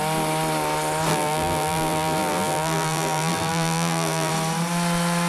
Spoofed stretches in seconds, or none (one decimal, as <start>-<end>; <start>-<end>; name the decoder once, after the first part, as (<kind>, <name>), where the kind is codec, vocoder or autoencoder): 1.1-4.3 (vocoder, BigVGAN v2)